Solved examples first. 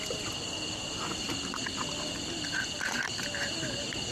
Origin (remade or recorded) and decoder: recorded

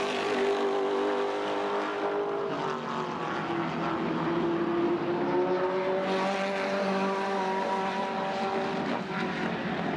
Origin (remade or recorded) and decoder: recorded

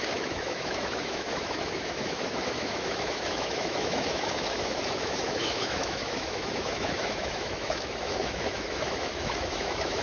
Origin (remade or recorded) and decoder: remade, autoencoder, DAC-VAE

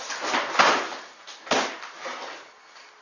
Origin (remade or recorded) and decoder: recorded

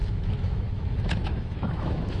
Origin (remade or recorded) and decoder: remade, autoencoder, DAC-VAE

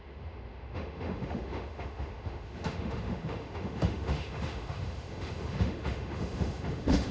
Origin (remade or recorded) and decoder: remade, autoencoder, DAC-VAE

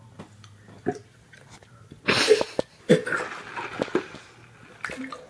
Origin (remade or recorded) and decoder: recorded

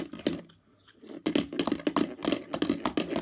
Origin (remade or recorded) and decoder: recorded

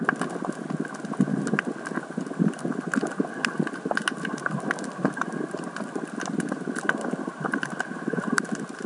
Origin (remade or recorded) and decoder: recorded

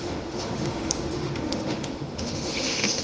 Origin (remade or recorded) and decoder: remade, autoencoder, DAC-VAE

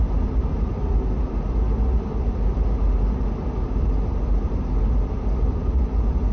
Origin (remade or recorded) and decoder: recorded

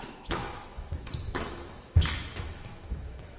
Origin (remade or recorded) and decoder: remade, autoencoder, DAC-VAE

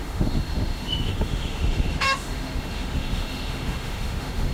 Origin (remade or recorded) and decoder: remade, autoencoder, DAC-VAE